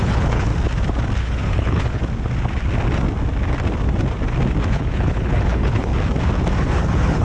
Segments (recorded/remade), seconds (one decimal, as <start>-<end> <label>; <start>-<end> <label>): 0.0-0.5 remade; 0.5-1.2 recorded; 1.2-2.0 remade; 2.0-4.7 recorded; 4.7-5.9 remade; 5.9-6.6 recorded; 6.6-7.2 remade